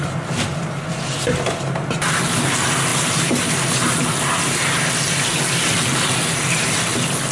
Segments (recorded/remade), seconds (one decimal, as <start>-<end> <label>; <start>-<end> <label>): 0.0-7.3 recorded